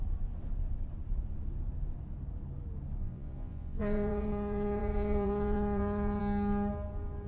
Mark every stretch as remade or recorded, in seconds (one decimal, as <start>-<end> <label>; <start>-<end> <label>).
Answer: 0.0-3.0 recorded; 3.0-6.2 remade; 6.2-7.3 recorded